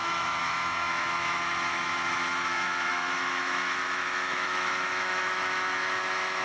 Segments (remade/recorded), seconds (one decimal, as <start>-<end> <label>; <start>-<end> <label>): 0.0-6.4 remade